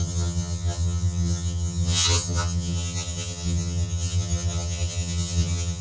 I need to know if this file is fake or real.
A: fake